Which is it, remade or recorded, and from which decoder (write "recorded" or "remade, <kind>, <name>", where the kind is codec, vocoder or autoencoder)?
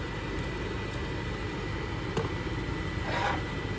recorded